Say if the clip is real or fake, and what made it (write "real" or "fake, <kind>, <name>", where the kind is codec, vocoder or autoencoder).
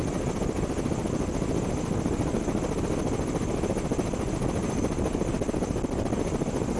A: real